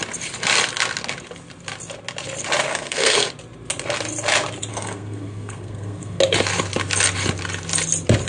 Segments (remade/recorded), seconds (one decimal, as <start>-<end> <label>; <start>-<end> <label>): 0.0-2.7 recorded; 2.7-3.3 remade; 3.3-4.7 recorded; 4.7-6.2 remade; 6.2-8.3 recorded